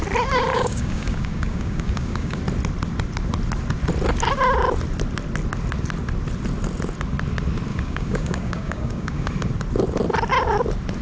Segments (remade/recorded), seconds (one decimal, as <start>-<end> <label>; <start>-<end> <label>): 0.0-0.5 recorded; 0.5-2.4 remade; 2.4-7.7 recorded; 7.7-9.3 remade; 9.3-11.0 recorded